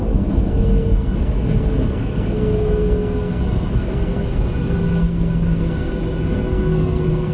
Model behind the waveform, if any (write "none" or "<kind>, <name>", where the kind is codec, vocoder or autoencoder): codec, SNAC